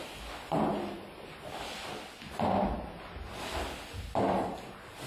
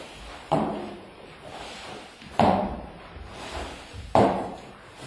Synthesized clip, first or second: second